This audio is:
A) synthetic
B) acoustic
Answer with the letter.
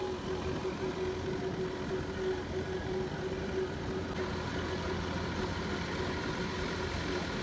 B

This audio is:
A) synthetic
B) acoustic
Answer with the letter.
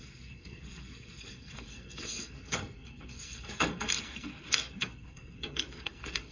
A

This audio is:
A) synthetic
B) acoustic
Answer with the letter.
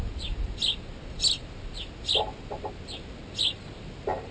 B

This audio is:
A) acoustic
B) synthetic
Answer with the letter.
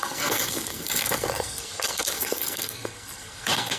B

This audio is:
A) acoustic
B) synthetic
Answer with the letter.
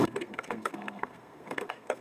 B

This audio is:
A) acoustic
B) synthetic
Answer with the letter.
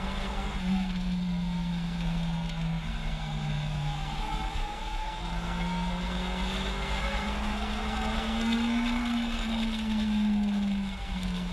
B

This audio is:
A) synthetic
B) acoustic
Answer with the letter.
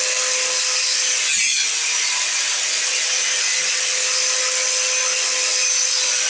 B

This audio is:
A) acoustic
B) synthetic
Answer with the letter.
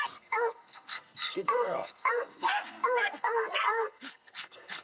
B